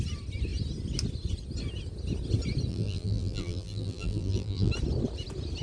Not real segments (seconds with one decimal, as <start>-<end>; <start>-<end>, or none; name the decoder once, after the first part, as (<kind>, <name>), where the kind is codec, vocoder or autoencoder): 2.7-4.7 (vocoder, BigVGAN v2)